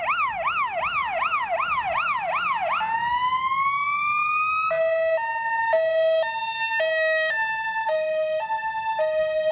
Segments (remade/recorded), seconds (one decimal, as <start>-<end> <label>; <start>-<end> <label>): 0.0-9.5 recorded